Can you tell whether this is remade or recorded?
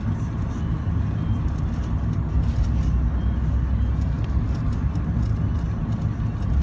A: recorded